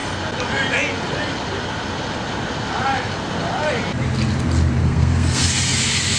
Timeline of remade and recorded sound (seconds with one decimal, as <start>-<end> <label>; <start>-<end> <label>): 0.0-4.8 recorded; 4.8-5.5 remade; 5.5-6.2 recorded